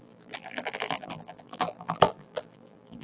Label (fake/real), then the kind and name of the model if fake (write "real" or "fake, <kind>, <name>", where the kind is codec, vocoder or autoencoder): fake, vocoder, BigVGAN v2